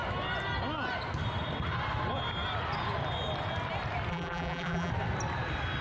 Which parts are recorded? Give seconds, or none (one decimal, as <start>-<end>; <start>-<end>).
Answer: 0.0-4.1; 4.9-5.8